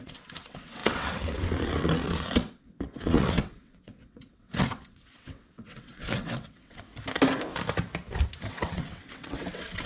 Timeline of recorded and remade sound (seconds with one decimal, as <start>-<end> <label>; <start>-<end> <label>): 0.0-6.9 remade; 6.9-8.5 recorded; 8.5-9.9 remade